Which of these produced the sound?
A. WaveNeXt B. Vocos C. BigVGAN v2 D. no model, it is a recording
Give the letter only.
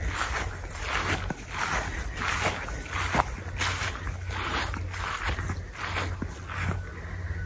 D